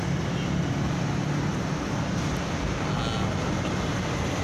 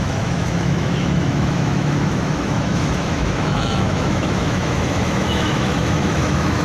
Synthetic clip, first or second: second